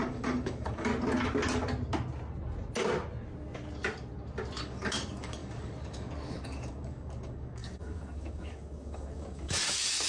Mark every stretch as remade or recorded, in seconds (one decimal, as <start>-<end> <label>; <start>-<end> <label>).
0.0-0.9 remade; 0.9-4.6 recorded; 4.6-10.1 remade